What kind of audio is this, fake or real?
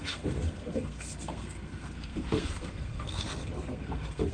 fake